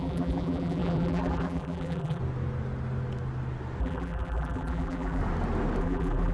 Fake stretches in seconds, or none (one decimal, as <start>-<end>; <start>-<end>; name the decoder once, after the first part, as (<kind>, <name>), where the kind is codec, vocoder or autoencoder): 0.0-2.2 (vocoder, BigVGAN v2); 3.8-5.2; 5.8-6.3

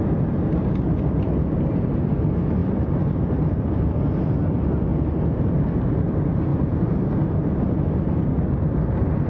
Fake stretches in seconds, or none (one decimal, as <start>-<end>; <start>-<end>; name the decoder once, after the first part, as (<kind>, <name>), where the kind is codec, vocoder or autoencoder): 6.5-7.4 (vocoder, BigVGAN v2)

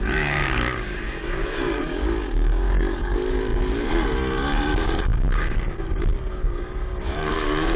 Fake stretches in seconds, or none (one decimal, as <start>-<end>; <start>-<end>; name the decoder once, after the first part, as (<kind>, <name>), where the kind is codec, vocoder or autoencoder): 0.0-7.8 (codec, DAC)